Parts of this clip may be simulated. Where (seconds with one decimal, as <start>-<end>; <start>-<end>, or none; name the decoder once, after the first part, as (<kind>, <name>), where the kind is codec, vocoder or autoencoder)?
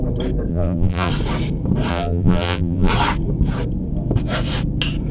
0.5-1.1 (vocoder, BigVGAN v2); 1.9-2.9